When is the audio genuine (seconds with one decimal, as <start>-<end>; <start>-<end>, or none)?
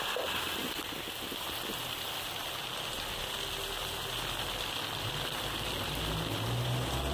0.0-7.1